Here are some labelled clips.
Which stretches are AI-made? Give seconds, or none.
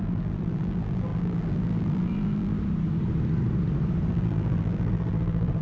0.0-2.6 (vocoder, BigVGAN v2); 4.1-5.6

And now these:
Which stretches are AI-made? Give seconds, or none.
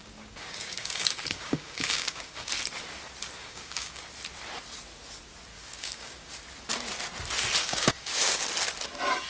0.0-2.5 (codec, DAC); 3.4-4.0; 5.5-6.3; 7.6-8.4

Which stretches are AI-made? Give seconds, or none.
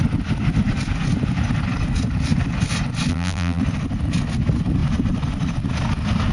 3.1-3.6 (vocoder, BigVGAN v2)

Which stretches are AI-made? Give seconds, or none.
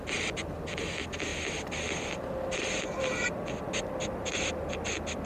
none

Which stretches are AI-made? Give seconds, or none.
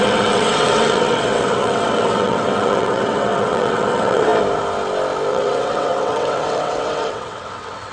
0.0-4.3 (vocoder, WaveNeXt); 5.3-7.9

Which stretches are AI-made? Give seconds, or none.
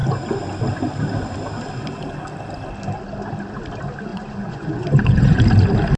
4.1-5.4 (vocoder, Vocos)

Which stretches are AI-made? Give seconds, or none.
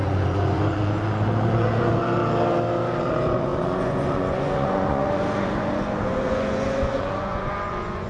0.0-2.2 (vocoder, Vocos); 3.0-8.1